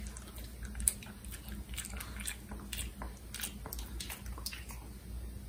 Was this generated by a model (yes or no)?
no